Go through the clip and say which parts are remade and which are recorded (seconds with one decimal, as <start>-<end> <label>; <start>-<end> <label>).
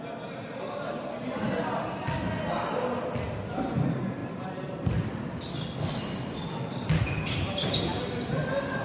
0.0-8.8 recorded